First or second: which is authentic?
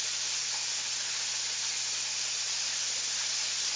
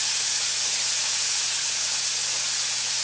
first